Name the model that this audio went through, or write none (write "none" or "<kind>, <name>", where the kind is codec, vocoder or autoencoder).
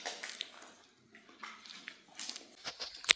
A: none